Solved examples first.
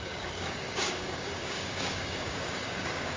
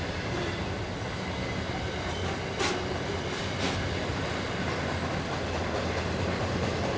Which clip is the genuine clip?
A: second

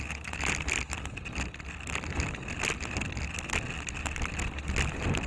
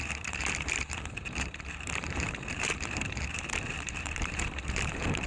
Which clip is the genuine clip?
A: first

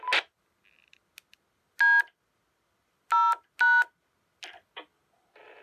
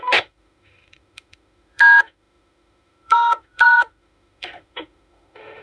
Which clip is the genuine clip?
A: first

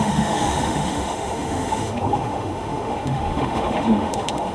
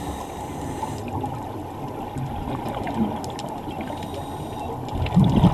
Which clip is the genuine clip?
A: second